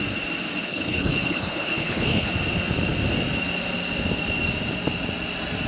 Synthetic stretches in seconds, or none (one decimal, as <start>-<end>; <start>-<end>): 0.6-2.3